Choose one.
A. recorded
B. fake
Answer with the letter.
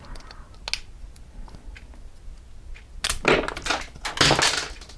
A